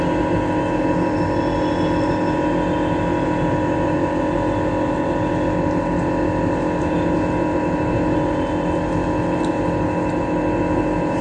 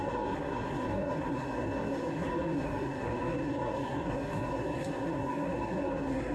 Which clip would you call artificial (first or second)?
second